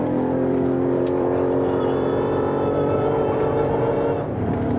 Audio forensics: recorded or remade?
remade